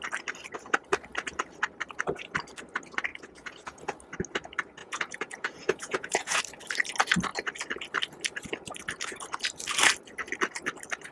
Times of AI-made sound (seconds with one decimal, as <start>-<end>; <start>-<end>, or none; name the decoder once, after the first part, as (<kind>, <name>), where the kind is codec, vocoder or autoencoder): 3.1-3.8 (vocoder, Vocos); 4.8-6.4